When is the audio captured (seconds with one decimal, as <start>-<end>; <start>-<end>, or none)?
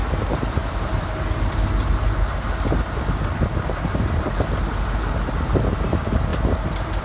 0.0-7.0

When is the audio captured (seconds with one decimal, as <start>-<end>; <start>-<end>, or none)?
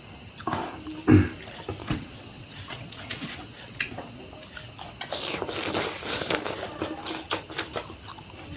0.0-1.8; 4.2-8.6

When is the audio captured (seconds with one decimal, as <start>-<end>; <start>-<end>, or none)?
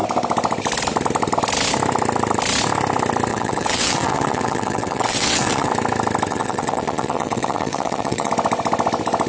0.0-3.3; 5.7-6.3; 8.3-9.3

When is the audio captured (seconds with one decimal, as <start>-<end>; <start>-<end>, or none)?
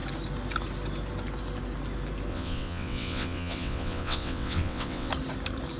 0.0-2.3; 5.1-5.8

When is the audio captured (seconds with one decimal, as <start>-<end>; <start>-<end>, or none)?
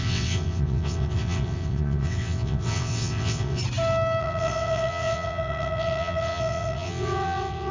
3.6-4.2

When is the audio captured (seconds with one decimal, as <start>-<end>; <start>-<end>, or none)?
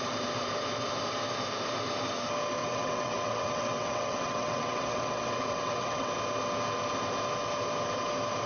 0.0-2.6; 6.1-8.5